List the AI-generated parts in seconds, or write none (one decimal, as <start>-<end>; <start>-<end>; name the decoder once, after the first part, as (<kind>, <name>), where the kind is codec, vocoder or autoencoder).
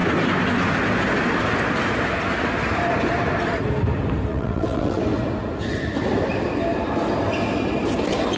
4.3-5.0 (vocoder, WaveNeXt)